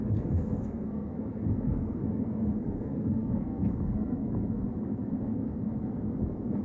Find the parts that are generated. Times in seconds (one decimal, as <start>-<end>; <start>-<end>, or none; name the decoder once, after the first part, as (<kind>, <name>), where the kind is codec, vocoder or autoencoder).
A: 0.0-6.6 (codec, SNAC)